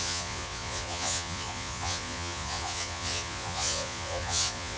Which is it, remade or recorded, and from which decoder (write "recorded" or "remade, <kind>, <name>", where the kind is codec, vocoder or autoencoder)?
remade, vocoder, Vocos